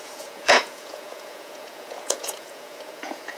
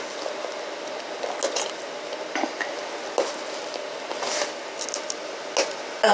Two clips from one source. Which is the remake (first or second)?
first